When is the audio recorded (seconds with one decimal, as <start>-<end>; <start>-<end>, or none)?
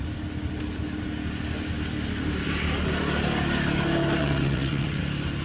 0.0-4.2; 5.0-5.4